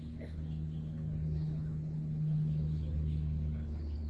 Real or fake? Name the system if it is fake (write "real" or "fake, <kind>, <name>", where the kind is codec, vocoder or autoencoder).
fake, codec, HILCodec